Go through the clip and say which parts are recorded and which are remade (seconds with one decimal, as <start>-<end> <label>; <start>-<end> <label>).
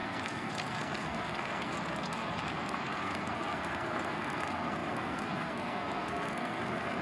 0.0-7.0 remade